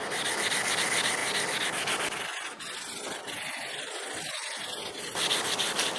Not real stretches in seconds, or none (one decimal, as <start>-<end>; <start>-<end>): none